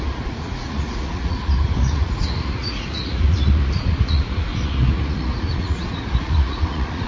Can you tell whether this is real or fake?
fake